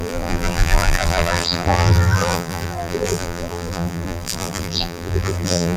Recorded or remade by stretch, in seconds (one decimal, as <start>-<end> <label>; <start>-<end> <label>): 0.0-5.8 remade